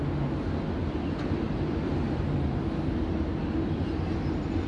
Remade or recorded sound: recorded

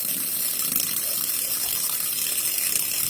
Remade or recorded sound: recorded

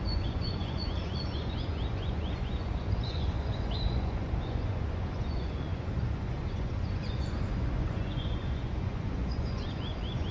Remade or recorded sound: remade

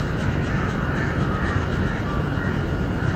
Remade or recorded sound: recorded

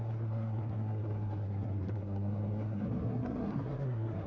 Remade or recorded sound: remade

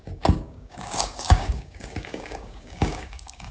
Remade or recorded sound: remade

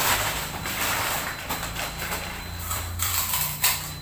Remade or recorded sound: remade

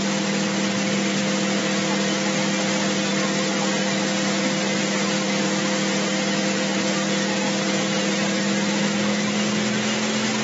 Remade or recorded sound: recorded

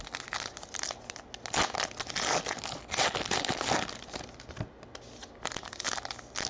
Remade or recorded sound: recorded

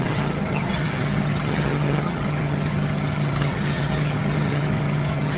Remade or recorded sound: remade